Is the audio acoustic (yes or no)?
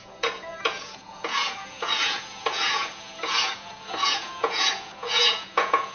no